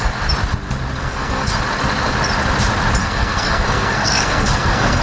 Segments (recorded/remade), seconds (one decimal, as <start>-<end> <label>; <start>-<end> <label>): 0.0-1.0 recorded; 1.0-1.5 remade; 1.5-3.0 recorded; 3.0-5.0 remade